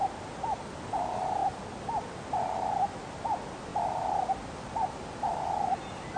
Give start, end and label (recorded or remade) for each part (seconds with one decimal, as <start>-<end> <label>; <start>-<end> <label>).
0.0-1.4 recorded; 1.4-2.0 remade; 2.0-3.7 recorded; 3.7-5.3 remade; 5.3-6.2 recorded